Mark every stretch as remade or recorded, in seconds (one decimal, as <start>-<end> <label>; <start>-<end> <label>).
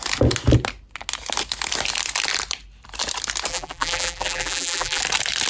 0.0-3.5 recorded; 3.5-5.0 remade; 5.0-5.5 recorded